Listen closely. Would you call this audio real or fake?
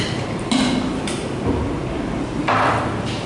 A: fake